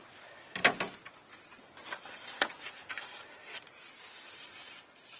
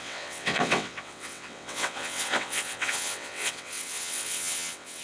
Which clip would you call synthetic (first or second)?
second